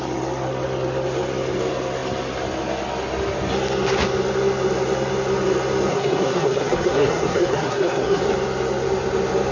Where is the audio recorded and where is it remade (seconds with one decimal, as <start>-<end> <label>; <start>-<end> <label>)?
0.0-5.9 recorded; 5.9-8.2 remade; 8.2-9.5 recorded